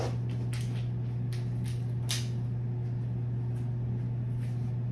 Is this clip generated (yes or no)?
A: no